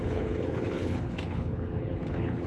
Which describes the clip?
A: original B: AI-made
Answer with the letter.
B